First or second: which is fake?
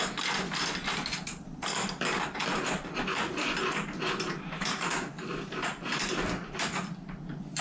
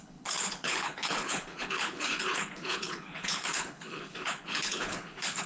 second